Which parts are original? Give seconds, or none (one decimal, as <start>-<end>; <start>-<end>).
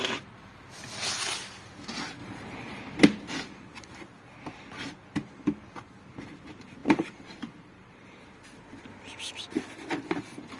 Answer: 0.0-2.2; 3.0-6.8; 8.3-10.6